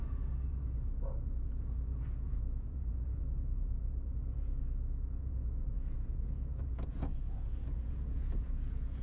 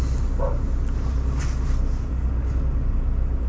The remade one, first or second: first